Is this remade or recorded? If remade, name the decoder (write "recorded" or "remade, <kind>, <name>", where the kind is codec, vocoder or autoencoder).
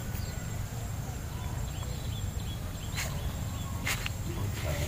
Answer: recorded